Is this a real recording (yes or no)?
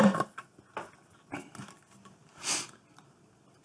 yes